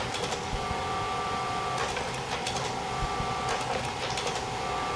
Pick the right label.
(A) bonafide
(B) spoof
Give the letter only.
A